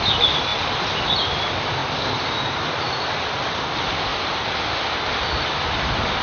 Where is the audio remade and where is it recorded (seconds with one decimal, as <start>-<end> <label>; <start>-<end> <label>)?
0.0-6.2 recorded